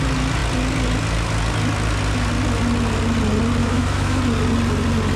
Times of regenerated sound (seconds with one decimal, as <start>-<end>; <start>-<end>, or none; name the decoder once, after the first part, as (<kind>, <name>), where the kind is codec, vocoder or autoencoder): 3.6-4.2 (autoencoder, DAC-VAE)